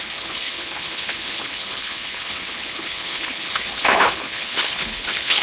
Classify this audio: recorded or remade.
remade